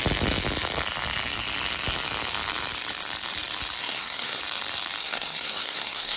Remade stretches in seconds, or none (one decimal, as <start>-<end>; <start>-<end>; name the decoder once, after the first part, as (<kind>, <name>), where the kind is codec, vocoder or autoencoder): 3.8-4.4 (codec, SNAC); 5.0-6.2